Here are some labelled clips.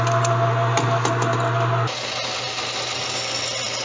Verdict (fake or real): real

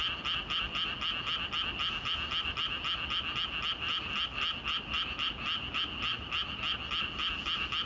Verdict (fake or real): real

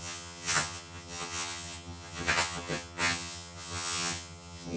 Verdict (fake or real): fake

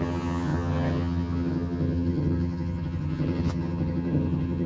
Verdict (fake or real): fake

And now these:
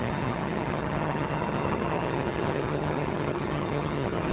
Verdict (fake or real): fake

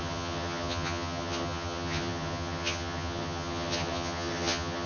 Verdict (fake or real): fake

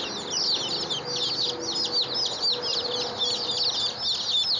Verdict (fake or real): real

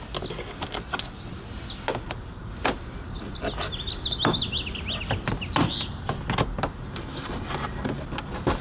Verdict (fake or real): real